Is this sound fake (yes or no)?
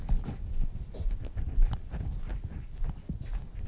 no